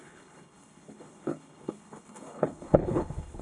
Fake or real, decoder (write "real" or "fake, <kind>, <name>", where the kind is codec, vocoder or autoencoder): fake, codec, HILCodec